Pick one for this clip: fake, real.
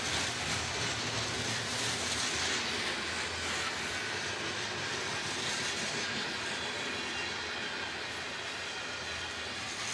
real